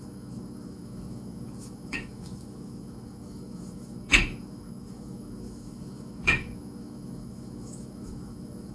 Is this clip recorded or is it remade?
remade